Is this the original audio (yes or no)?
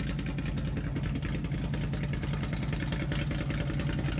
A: yes